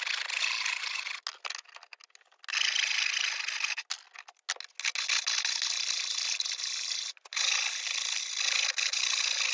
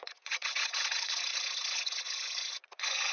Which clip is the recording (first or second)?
first